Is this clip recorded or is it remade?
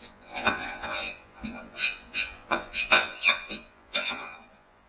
remade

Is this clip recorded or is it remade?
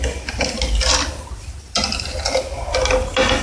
recorded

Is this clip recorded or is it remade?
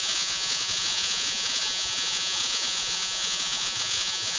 remade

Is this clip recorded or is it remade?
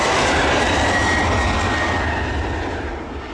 recorded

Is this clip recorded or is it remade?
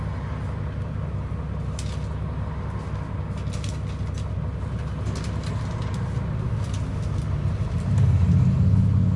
recorded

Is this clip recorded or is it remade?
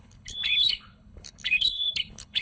remade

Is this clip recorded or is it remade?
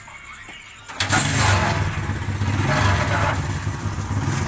recorded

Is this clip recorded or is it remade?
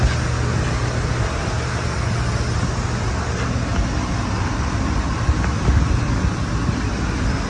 recorded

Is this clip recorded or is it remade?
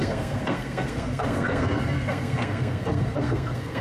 remade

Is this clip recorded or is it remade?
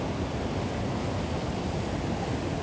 recorded